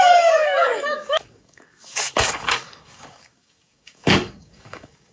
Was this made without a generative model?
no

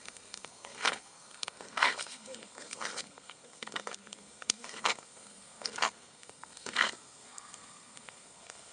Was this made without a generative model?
no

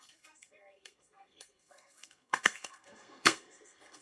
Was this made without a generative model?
no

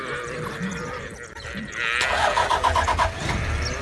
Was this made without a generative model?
yes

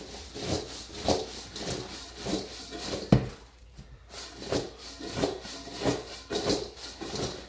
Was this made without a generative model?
yes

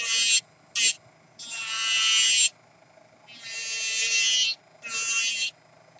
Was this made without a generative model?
yes